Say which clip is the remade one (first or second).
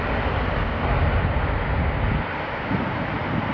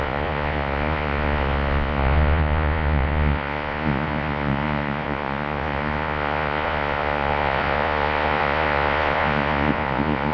second